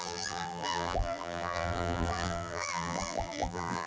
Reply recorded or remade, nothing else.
remade